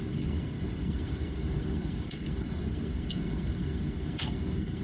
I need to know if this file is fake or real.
fake